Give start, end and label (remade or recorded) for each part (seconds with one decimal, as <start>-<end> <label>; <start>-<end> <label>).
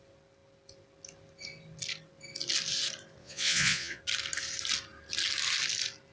0.0-3.2 recorded; 3.2-4.0 remade; 4.0-6.1 recorded